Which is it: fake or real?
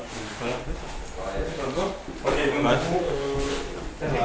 real